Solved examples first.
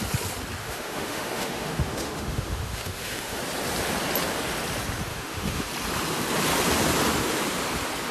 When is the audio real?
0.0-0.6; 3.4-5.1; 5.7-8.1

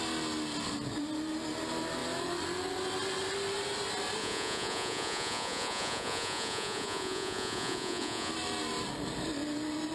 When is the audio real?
0.0-4.2; 8.3-9.9